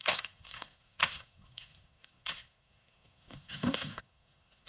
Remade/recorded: remade